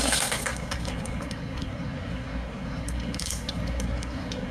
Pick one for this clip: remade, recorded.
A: remade